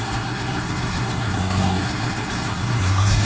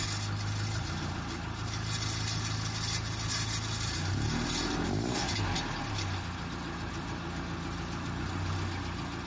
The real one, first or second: second